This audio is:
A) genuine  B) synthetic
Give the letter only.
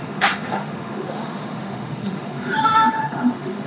B